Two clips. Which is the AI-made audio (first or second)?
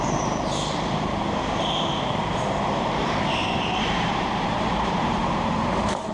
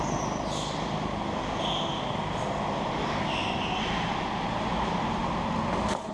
first